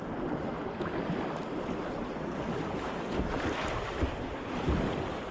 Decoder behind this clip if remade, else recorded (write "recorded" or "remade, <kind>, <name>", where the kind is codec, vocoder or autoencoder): recorded